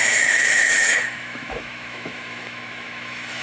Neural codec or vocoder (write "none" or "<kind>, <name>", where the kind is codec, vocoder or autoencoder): autoencoder, DAC-VAE